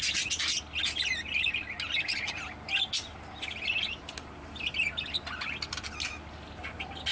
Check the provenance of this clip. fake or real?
real